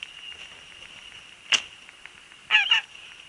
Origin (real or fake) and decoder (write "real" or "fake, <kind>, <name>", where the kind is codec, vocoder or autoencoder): real